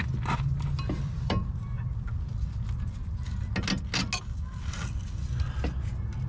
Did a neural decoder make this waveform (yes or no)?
no